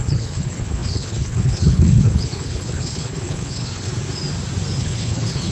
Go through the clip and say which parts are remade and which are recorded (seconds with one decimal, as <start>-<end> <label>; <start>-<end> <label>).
0.0-3.9 remade; 3.9-4.8 recorded; 4.8-5.5 remade